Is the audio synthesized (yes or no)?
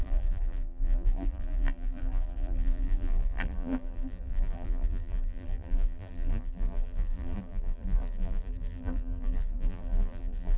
yes